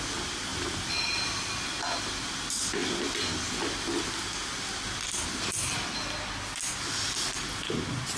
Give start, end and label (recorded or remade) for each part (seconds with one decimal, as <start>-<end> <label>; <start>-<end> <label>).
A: 0.0-8.2 recorded